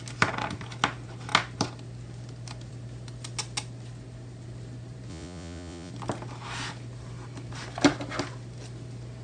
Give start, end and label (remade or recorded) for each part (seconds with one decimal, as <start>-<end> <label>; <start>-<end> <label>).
0.0-5.1 recorded; 5.1-5.9 remade; 5.9-9.2 recorded